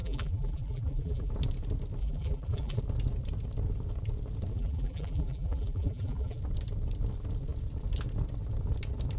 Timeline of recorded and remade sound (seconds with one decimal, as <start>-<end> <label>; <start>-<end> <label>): 0.0-1.3 remade; 1.3-2.0 recorded; 2.0-2.8 remade; 2.8-4.5 recorded; 4.5-6.4 remade; 6.4-9.2 recorded